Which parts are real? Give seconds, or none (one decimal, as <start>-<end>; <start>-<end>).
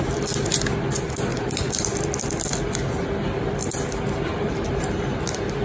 0.0-5.6